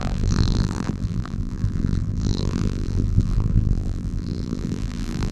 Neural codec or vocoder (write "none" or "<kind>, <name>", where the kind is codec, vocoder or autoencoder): vocoder, BigVGAN v2